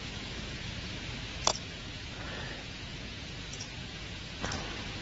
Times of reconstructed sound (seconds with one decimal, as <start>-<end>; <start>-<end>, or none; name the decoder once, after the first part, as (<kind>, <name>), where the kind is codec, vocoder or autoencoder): 0.0-1.0 (vocoder, Vocos); 1.5-4.4